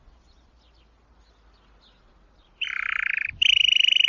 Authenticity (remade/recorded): recorded